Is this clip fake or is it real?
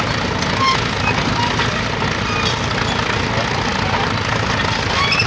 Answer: real